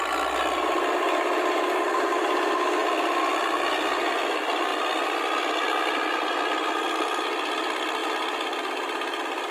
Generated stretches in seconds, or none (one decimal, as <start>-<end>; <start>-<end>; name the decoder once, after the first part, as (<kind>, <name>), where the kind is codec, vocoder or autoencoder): none

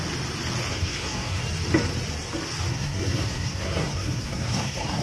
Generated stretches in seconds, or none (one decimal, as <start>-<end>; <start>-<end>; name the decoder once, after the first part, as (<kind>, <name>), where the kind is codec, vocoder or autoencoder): 0.7-1.4 (codec, SNAC); 2.7-5.0

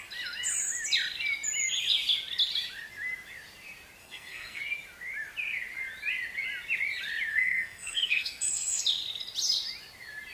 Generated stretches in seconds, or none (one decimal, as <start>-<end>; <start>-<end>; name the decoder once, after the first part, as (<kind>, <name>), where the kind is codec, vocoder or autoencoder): 4.0-4.6 (codec, SNAC); 7.3-8.8

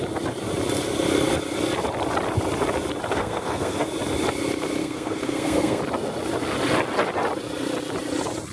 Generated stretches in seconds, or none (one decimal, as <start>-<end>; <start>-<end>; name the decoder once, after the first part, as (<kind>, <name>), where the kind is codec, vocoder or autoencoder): 3.1-3.9 (codec, SNAC); 4.8-5.8